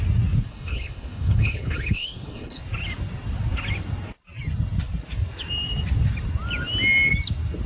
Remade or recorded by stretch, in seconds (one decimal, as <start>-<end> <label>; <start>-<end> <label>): 0.0-0.5 recorded; 0.5-2.6 remade; 2.6-7.7 recorded